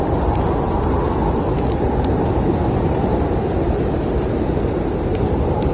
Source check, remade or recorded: recorded